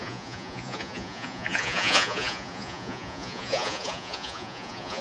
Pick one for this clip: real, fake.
fake